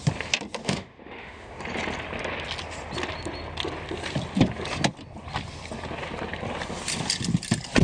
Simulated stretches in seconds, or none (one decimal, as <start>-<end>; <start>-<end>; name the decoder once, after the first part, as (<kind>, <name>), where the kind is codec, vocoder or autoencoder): 0.6-1.6 (autoencoder, DAC-VAE)